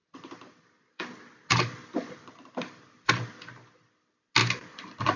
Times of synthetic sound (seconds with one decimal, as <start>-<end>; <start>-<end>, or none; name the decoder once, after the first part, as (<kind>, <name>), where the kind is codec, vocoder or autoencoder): 0.0-3.1 (vocoder, BigVGAN v2); 4.4-5.2